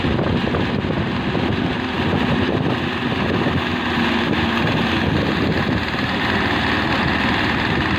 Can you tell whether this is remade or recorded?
recorded